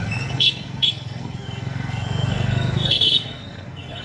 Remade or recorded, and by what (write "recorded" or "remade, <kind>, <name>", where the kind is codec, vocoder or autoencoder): remade, codec, SNAC